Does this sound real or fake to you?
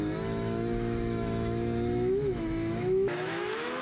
fake